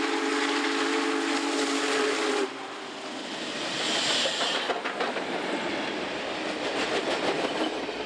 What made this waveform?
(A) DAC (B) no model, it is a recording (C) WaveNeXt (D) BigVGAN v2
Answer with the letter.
B